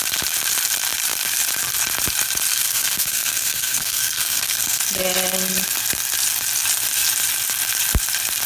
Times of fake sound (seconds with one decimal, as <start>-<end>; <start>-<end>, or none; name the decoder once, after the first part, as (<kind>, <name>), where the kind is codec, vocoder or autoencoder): 2.5-4.8 (codec, SNAC)